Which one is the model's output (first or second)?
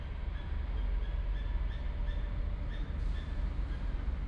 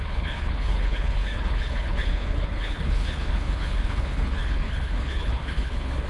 second